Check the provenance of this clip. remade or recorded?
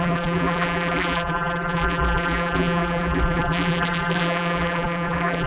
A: remade